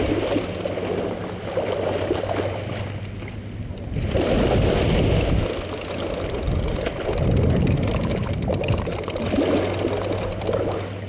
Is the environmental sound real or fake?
real